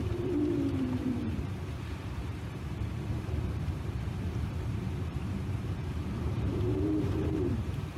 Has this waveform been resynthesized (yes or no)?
yes